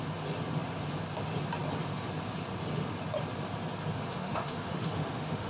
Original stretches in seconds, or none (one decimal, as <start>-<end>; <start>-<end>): 0.0-4.1